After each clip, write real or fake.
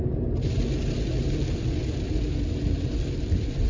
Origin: real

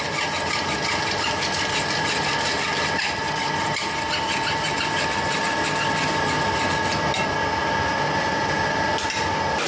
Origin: real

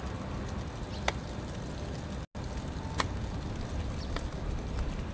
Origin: real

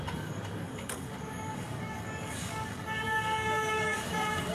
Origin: fake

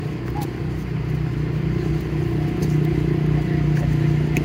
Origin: real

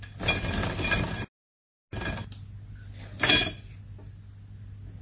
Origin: real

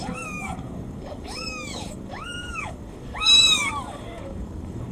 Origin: fake